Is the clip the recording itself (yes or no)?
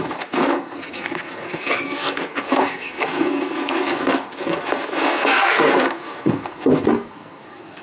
no